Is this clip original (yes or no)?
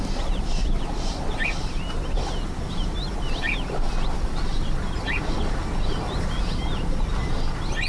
yes